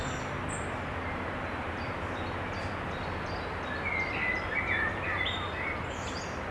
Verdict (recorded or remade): recorded